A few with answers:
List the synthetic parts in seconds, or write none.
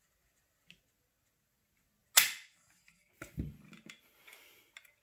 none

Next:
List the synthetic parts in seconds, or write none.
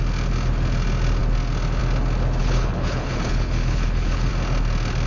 2.4-4.3 (codec, HILCodec)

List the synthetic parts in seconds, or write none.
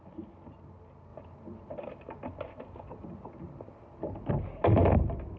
none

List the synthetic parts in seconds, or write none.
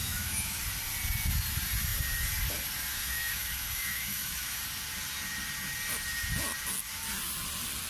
0.0-0.6 (autoencoder, DAC-VAE); 2.9-4.6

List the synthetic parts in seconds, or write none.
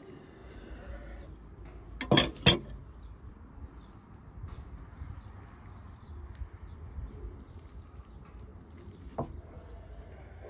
none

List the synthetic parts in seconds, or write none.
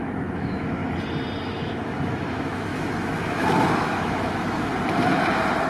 0.0-0.8 (autoencoder, DAC-VAE); 1.4-4.7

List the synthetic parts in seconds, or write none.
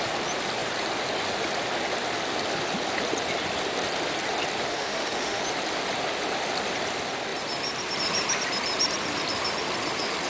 4.7-5.4 (autoencoder, DAC-VAE)